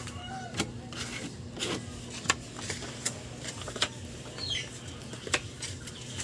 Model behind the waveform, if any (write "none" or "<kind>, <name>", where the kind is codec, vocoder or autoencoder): none